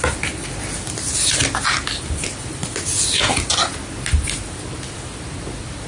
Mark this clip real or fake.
real